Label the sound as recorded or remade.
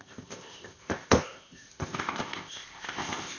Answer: remade